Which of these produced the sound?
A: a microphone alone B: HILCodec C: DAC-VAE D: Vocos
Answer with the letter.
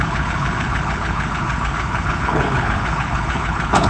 B